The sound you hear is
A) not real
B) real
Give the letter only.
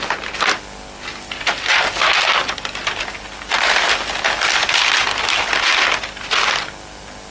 B